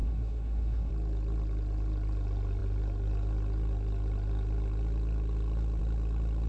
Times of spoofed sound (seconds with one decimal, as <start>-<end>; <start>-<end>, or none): 0.0-0.9